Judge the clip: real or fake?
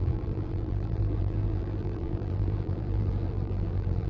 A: fake